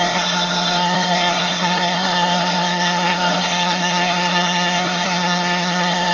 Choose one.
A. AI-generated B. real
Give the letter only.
A